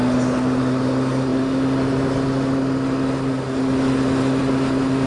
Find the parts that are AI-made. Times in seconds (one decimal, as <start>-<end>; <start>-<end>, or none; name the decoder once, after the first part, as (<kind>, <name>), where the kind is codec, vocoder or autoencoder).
none